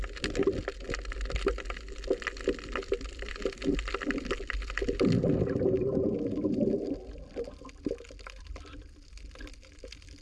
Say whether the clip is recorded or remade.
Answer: recorded